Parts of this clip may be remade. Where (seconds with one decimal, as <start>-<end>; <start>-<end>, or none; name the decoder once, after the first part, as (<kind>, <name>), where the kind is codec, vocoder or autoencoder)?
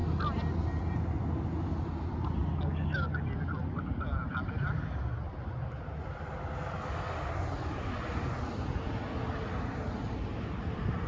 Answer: none